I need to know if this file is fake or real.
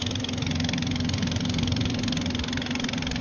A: real